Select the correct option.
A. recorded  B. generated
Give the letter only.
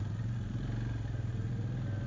A